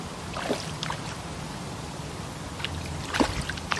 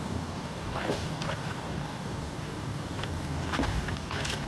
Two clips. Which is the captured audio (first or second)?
first